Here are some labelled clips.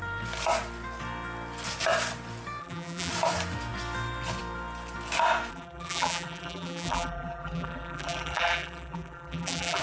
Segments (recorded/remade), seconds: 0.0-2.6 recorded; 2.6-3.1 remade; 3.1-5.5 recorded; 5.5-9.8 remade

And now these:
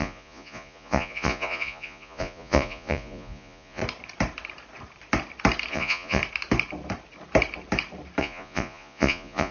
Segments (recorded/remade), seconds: 0.0-3.8 remade; 3.8-5.7 recorded; 5.7-6.2 remade; 6.2-8.2 recorded; 8.2-9.5 remade

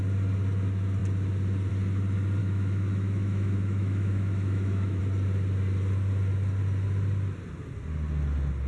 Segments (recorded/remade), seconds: 0.0-2.4 recorded; 2.4-5.0 remade; 5.0-8.7 recorded

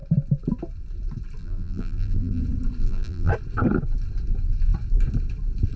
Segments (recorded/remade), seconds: 0.0-1.4 recorded; 1.4-2.4 remade; 2.4-2.8 recorded; 2.8-3.3 remade; 3.3-5.8 recorded

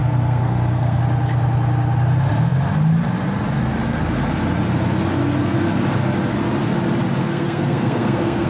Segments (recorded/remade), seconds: 0.0-1.0 remade; 1.0-7.2 recorded; 7.2-8.5 remade

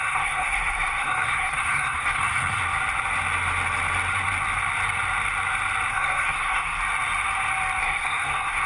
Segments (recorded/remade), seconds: 0.0-2.6 remade; 2.6-5.9 recorded; 5.9-6.8 remade; 6.8-7.8 recorded; 7.8-8.7 remade